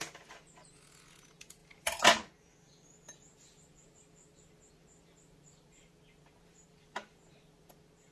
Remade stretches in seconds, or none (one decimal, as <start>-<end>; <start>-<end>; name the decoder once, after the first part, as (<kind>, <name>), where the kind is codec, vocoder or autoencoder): none